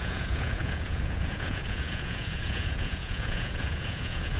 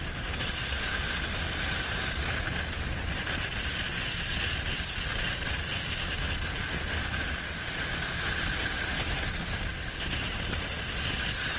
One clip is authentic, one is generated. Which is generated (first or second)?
first